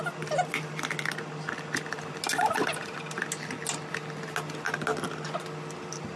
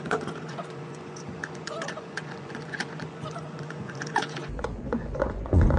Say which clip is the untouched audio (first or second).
first